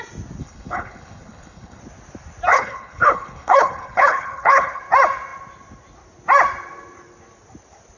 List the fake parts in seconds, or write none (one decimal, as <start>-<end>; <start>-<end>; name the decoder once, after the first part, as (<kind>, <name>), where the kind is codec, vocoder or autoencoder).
0.4-1.8 (codec, HILCodec); 2.5-4.8